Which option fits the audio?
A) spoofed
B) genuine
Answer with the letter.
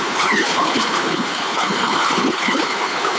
A